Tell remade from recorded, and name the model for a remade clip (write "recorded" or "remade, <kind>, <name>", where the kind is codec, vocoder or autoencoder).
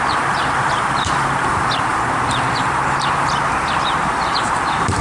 remade, vocoder, BigVGAN v2